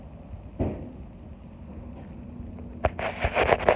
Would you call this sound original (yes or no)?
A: yes